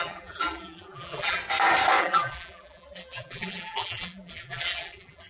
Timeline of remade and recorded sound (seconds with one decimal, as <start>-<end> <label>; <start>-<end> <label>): 0.0-1.4 remade; 1.4-2.0 recorded; 2.0-5.3 remade